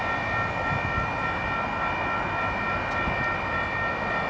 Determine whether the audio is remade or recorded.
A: recorded